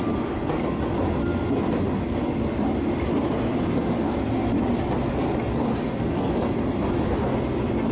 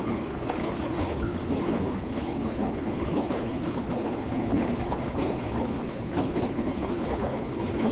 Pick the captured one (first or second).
first